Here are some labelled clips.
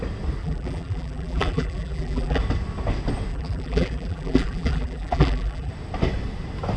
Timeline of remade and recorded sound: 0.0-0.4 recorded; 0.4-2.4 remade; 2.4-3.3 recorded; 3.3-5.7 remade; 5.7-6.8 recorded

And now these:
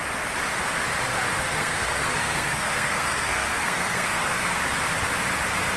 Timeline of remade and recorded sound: 0.0-1.3 recorded; 1.3-4.6 remade; 4.6-5.8 recorded

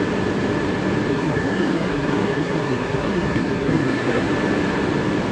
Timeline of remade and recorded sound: 0.0-1.1 recorded; 1.1-4.3 remade; 4.3-5.3 recorded

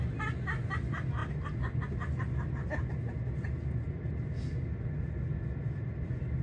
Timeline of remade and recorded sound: 0.0-6.4 recorded